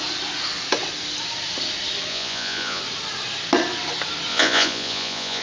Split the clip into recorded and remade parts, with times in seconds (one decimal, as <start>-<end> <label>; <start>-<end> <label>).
0.0-2.1 recorded; 2.1-2.8 remade; 2.8-4.3 recorded; 4.3-5.4 remade